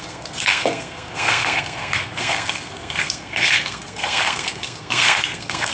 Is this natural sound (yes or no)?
no